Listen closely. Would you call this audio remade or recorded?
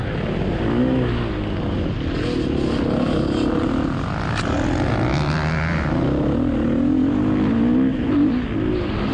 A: recorded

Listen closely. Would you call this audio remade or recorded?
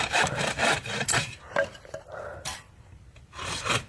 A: remade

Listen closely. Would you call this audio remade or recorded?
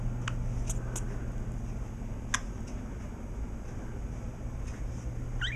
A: recorded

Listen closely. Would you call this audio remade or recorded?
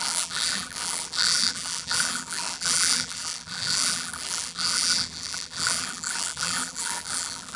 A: remade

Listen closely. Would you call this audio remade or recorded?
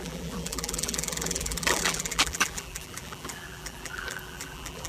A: remade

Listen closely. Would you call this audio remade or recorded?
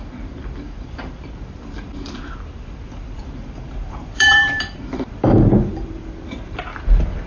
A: remade